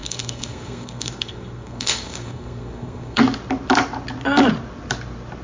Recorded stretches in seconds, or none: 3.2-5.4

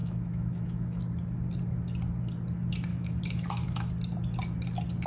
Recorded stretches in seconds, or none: 1.0-2.9; 3.9-5.1

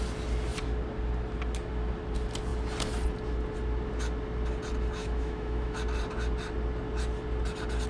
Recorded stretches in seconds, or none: 0.0-5.0; 5.8-7.9

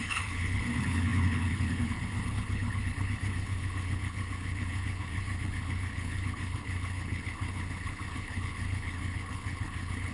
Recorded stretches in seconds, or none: none

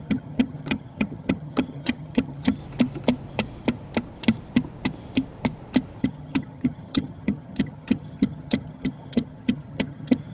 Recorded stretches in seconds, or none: 2.6-6.0

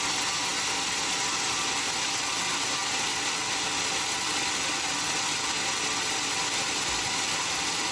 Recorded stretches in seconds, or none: 0.0-7.9